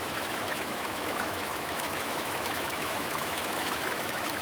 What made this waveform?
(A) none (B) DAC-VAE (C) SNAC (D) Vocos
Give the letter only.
B